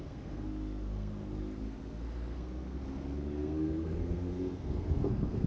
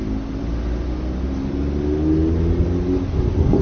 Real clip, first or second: second